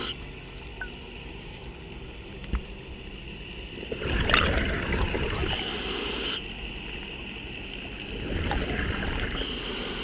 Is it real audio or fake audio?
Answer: real